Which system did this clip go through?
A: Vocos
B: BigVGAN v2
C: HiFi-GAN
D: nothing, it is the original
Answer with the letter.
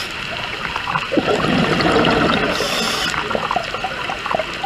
D